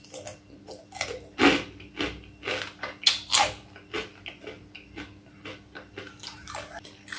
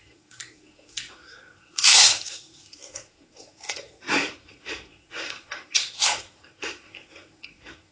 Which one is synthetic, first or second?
second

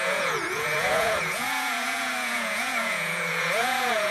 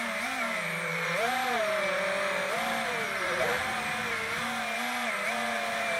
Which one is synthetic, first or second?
first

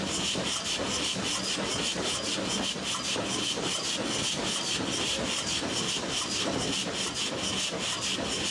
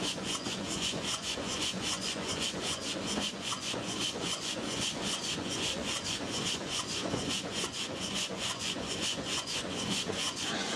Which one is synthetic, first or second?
second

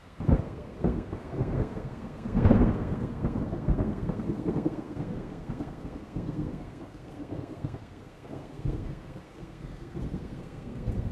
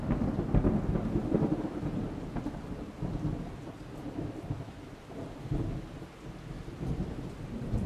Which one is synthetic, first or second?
first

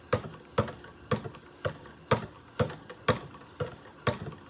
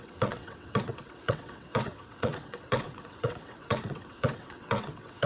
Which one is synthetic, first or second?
second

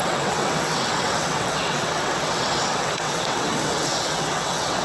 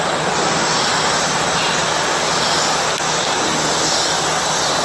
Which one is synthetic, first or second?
first